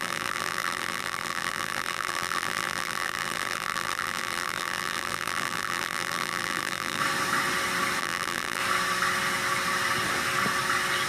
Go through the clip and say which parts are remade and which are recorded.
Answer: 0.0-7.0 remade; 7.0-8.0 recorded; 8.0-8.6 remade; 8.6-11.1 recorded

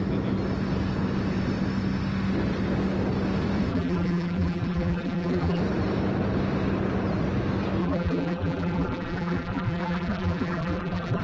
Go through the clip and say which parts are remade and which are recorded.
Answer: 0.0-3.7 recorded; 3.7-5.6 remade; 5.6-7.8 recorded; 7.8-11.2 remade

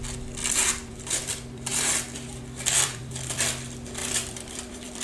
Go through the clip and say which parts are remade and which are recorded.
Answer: 0.0-0.4 recorded; 0.4-3.4 remade; 3.4-4.0 recorded; 4.0-5.0 remade